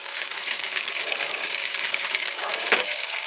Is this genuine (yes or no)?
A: no